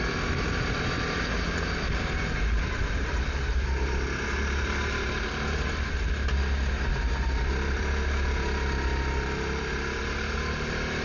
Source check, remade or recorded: recorded